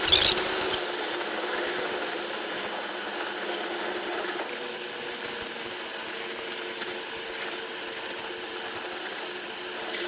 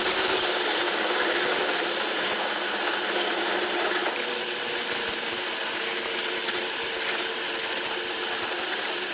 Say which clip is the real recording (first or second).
first